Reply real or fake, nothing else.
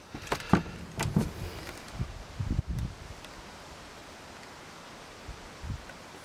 real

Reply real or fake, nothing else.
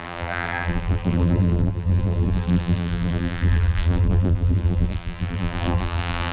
fake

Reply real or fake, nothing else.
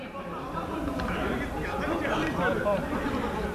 fake